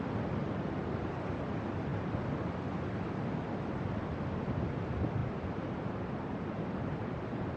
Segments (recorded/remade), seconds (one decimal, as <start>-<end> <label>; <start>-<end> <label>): 0.0-0.4 recorded; 0.4-1.2 remade; 1.2-5.2 recorded; 5.2-7.6 remade